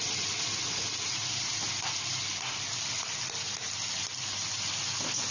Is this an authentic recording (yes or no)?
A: yes